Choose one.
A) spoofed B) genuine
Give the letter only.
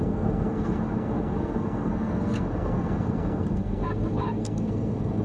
A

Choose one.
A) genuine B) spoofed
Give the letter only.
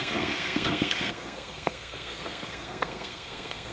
B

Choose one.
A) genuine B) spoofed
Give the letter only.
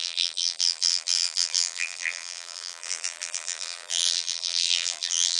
B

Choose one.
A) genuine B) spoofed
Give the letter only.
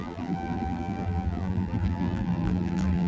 B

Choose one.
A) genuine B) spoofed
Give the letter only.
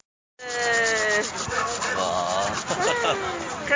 A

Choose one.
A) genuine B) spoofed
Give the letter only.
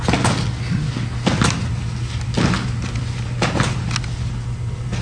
A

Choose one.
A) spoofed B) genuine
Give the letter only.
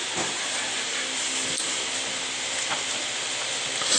B